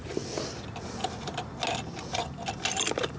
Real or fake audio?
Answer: real